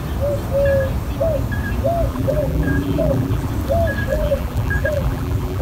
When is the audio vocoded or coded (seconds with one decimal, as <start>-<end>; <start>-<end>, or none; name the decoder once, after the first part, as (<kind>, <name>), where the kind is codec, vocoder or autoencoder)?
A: 2.1-3.5 (vocoder, BigVGAN v2); 4.1-5.6